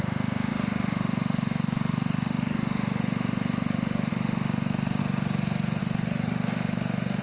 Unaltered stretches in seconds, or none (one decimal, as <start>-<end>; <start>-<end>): 5.0-5.8